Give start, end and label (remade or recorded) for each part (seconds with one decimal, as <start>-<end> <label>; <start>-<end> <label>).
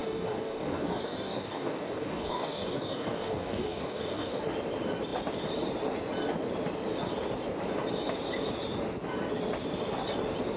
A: 0.0-4.4 remade; 4.4-10.6 recorded